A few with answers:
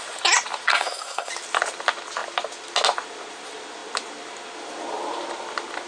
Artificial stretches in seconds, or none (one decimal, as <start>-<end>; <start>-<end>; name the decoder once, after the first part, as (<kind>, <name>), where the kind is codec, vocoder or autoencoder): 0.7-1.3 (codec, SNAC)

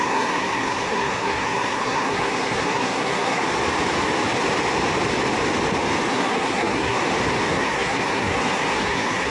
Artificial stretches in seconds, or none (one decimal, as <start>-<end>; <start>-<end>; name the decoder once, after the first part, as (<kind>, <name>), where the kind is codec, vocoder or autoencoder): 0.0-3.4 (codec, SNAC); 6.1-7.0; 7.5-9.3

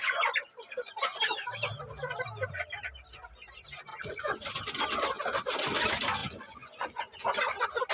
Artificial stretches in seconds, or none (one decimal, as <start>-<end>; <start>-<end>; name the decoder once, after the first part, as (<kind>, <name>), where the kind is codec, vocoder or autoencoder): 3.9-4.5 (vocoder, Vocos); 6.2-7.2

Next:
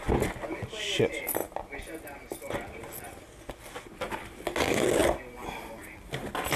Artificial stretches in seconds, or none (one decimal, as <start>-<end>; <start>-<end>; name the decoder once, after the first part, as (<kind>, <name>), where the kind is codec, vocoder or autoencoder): none